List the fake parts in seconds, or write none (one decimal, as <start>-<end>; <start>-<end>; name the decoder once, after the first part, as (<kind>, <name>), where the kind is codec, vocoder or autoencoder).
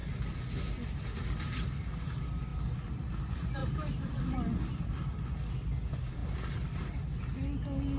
3.6-4.2 (vocoder, BigVGAN v2)